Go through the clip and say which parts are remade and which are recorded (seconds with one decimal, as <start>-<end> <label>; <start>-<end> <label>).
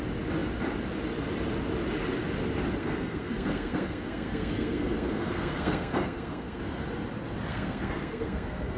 0.0-2.8 recorded; 2.8-6.6 remade; 6.6-7.5 recorded; 7.5-8.8 remade